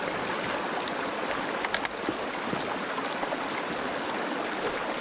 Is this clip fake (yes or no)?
no